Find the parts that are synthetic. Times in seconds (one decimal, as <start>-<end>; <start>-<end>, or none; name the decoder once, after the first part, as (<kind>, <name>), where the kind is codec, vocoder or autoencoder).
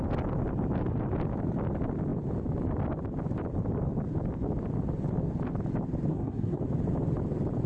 6.1-6.6 (codec, SNAC)